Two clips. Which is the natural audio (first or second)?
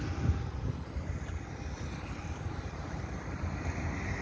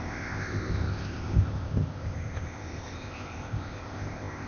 first